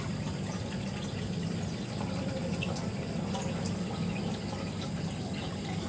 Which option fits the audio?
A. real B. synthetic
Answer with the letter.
A